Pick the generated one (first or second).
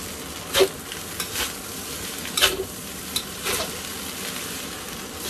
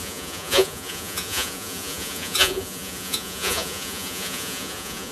second